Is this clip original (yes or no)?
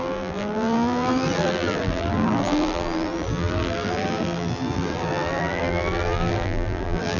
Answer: no